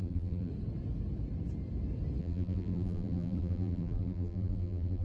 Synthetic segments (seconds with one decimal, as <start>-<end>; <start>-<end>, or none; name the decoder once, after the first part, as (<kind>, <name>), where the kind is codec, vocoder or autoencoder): 0.0-0.5 (vocoder, BigVGAN v2); 2.2-5.0